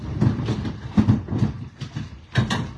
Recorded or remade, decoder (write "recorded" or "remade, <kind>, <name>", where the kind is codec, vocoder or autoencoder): recorded